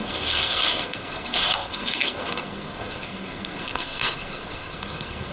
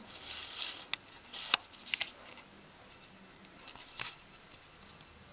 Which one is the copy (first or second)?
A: first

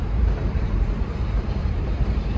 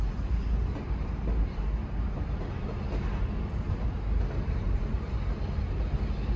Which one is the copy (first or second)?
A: first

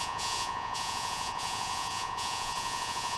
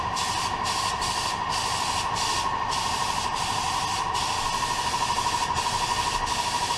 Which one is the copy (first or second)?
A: first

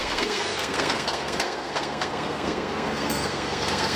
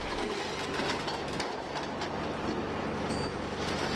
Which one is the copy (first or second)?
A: first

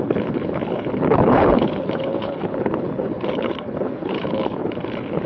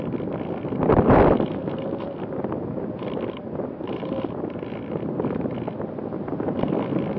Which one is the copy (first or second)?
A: first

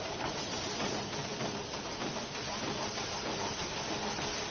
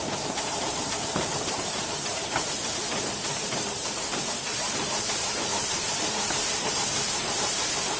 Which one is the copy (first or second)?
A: second